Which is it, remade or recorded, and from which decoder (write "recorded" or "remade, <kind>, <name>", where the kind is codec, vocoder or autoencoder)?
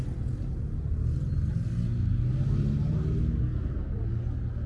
recorded